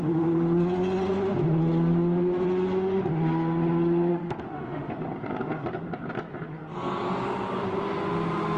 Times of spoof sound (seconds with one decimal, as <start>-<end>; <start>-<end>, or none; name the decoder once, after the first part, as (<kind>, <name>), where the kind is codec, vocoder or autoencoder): 4.1-4.9 (autoencoder, DAC-VAE)